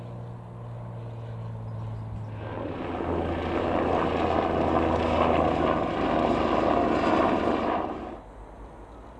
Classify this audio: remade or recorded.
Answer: recorded